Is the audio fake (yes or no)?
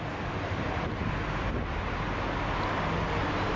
no